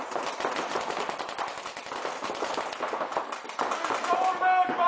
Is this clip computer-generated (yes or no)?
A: no